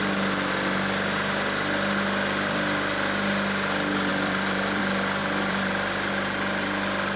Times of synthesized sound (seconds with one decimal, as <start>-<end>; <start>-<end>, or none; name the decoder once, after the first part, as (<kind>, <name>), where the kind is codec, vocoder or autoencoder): 4.1-4.8 (vocoder, BigVGAN v2); 5.2-6.1